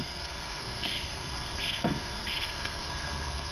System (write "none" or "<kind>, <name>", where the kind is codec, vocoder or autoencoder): codec, SNAC